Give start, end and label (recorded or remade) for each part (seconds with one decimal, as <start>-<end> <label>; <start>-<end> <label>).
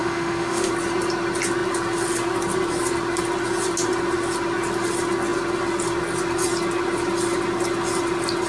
0.0-0.7 remade; 0.7-8.5 recorded